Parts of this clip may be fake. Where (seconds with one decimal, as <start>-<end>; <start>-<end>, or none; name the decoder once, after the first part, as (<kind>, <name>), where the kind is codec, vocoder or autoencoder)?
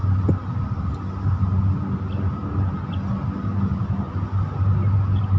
none